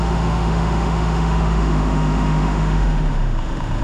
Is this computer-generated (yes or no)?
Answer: yes